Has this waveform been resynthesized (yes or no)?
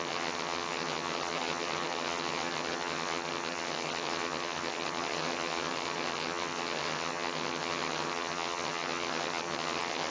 yes